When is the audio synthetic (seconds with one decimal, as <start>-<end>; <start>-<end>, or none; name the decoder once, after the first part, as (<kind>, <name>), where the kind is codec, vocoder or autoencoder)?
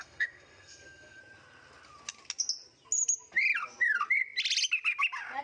0.0-1.2 (codec, SNAC)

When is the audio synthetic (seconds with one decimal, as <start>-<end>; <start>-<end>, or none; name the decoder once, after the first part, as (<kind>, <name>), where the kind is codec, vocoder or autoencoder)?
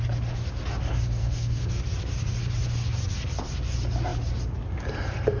1.2-1.8 (codec, SNAC)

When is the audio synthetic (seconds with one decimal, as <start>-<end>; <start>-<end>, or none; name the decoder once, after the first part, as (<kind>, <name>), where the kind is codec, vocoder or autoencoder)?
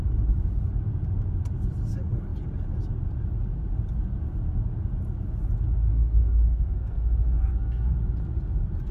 5.9-7.9 (codec, SNAC)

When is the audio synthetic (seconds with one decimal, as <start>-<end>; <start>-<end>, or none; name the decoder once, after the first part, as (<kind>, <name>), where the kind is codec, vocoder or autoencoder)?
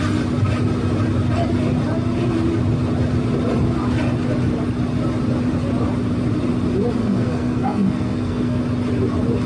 7.0-8.6 (codec, SNAC)